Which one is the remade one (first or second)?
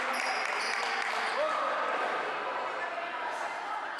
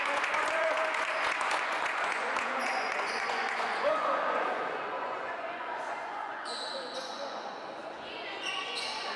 second